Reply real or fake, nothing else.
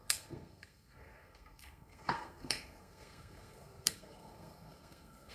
fake